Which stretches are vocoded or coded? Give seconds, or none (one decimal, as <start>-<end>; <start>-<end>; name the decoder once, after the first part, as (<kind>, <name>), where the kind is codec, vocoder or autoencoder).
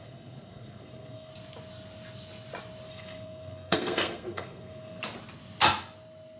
0.0-1.3 (codec, SNAC); 2.9-5.0